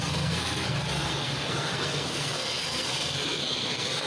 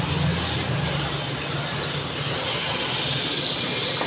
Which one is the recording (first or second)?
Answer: second